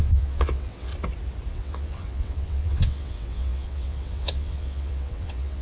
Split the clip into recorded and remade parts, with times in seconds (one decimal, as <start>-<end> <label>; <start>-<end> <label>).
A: 0.0-0.9 remade; 0.9-1.5 recorded; 1.5-5.6 remade